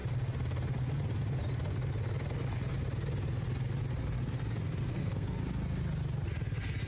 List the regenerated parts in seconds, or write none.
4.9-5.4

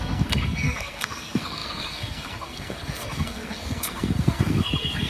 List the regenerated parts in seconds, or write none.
0.0-5.1

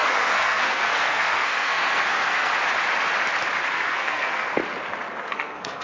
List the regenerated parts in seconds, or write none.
0.0-2.5; 3.7-4.6; 5.2-5.8

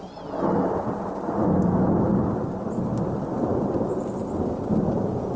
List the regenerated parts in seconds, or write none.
none

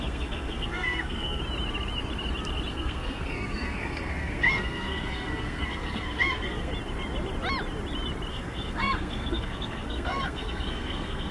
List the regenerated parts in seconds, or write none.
0.0-1.4; 2.7-6.7; 8.3-11.3

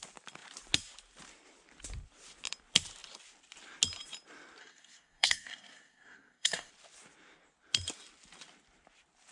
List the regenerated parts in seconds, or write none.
4.6-6.7